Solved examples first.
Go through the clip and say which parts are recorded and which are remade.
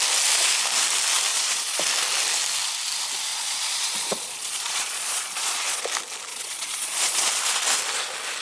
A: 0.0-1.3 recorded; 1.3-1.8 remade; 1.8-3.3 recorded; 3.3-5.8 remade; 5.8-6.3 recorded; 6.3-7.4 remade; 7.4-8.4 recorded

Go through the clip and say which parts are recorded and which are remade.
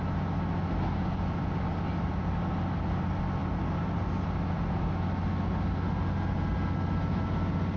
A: 0.0-7.8 recorded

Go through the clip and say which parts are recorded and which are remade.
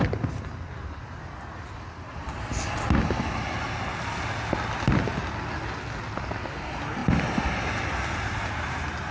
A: 0.0-9.1 recorded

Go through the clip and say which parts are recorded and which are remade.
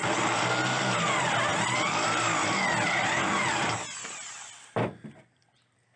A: 0.0-6.0 recorded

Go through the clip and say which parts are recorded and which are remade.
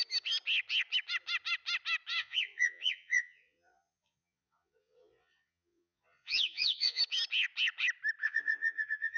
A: 0.0-2.2 recorded; 2.2-7.0 remade; 7.0-8.2 recorded; 8.2-9.2 remade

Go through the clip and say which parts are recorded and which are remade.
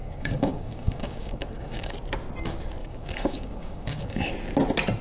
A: 0.0-1.9 remade; 1.9-2.8 recorded; 2.8-4.3 remade; 4.3-5.0 recorded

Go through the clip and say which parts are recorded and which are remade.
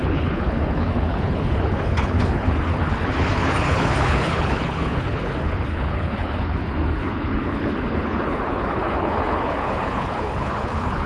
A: 0.0-11.1 remade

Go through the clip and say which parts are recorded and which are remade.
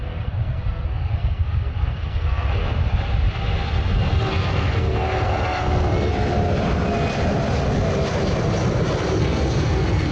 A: 0.0-2.6 remade; 2.6-4.3 recorded; 4.3-6.1 remade; 6.1-9.2 recorded; 9.2-10.1 remade